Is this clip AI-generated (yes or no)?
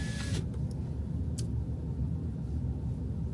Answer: no